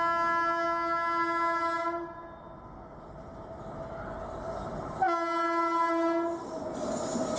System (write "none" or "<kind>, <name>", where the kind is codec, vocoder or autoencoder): none